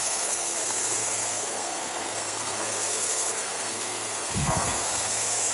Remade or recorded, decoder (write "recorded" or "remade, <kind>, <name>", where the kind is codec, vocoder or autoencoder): remade, codec, SNAC